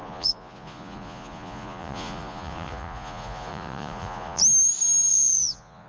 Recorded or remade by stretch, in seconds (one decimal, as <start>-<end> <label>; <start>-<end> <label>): 0.0-4.4 remade; 4.4-5.1 recorded; 5.1-5.9 remade